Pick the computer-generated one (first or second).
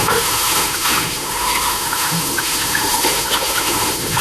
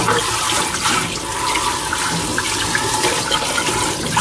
first